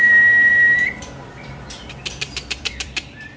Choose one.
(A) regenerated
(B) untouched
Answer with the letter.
A